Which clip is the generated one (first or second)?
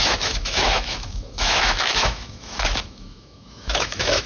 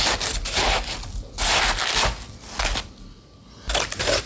first